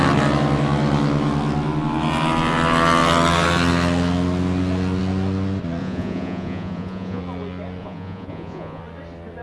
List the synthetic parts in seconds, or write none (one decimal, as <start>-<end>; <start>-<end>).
5.8-7.2; 7.8-8.8